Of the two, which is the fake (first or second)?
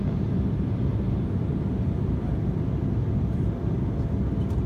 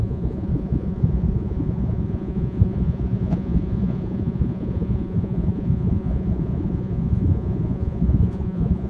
second